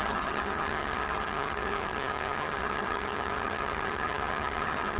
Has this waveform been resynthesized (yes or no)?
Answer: yes